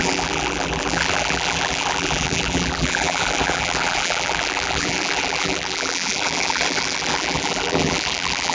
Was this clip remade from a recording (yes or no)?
yes